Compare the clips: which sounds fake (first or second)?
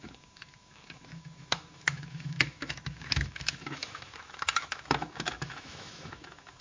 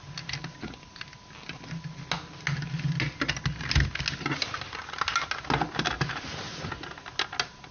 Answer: first